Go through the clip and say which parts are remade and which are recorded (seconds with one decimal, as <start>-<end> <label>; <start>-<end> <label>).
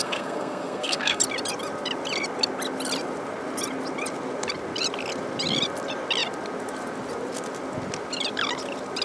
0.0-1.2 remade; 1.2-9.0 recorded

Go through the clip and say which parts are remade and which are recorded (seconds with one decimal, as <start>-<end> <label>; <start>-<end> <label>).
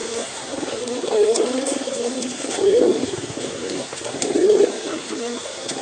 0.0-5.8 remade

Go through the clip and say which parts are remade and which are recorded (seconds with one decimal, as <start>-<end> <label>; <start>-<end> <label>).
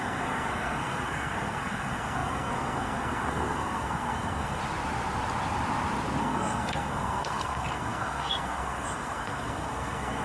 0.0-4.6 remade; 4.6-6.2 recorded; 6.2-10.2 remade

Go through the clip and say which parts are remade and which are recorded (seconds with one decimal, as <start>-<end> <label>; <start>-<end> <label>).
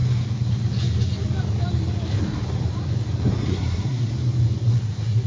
0.0-3.5 recorded; 3.5-4.1 remade; 4.1-5.3 recorded